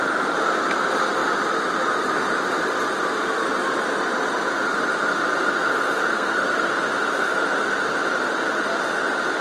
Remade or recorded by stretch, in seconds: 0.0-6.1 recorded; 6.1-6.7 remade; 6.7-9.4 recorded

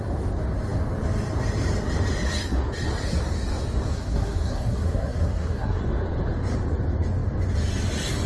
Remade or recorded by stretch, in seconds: 0.0-3.9 recorded; 3.9-5.8 remade; 5.8-8.3 recorded

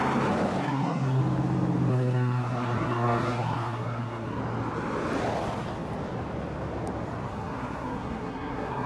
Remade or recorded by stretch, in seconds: 0.0-0.6 recorded; 0.6-1.2 remade; 1.2-1.9 recorded; 1.9-4.4 remade; 4.4-7.3 recorded; 7.3-8.9 remade

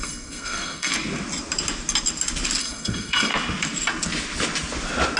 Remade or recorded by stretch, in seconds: 0.0-0.9 remade; 0.9-2.6 recorded; 2.6-3.3 remade; 3.3-5.2 recorded